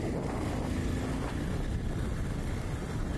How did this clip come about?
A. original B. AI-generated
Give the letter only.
A